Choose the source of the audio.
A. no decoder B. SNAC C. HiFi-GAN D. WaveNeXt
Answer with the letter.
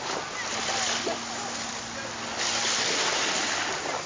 A